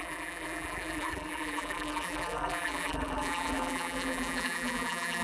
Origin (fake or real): fake